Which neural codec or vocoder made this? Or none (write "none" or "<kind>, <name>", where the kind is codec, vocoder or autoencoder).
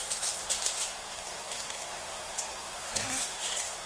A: codec, SNAC